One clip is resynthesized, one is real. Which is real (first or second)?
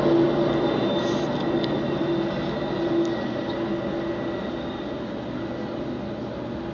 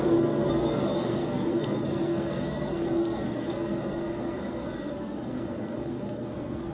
first